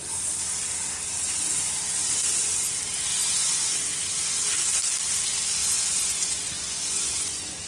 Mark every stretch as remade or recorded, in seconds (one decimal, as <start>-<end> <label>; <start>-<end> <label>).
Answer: 0.0-3.2 recorded; 3.2-3.7 remade; 3.7-5.6 recorded; 5.6-7.7 remade